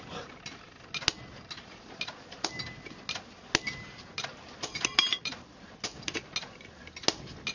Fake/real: real